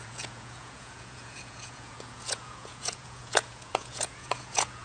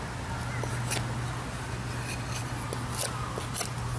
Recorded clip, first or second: second